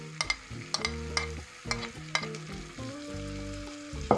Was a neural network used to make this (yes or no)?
no